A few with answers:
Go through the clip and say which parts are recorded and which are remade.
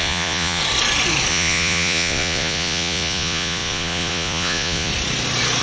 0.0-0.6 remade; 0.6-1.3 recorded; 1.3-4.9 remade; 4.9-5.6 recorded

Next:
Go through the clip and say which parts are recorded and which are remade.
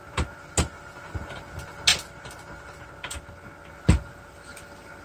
0.0-5.0 recorded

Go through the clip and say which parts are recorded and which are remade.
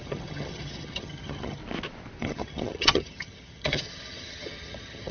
0.0-1.6 remade; 1.6-2.2 recorded; 2.2-5.1 remade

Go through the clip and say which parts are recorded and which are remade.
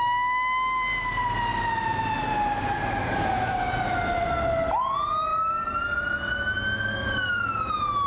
0.0-3.0 recorded; 3.0-3.7 remade; 3.7-8.1 recorded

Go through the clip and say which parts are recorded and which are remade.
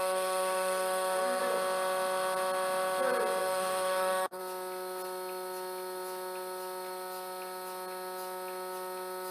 0.0-1.4 remade; 1.4-3.4 recorded; 3.4-4.4 remade; 4.4-9.3 recorded